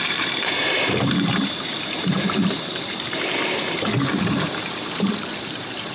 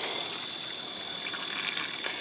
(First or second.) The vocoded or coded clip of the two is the first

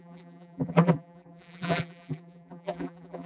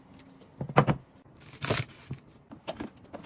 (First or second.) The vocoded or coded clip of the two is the first